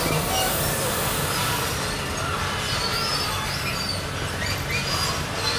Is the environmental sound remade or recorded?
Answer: recorded